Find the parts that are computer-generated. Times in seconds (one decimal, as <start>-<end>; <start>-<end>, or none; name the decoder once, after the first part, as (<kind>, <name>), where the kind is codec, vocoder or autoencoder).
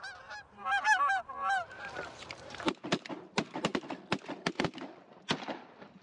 0.0-0.6 (vocoder, BigVGAN v2); 1.1-3.7; 4.5-6.0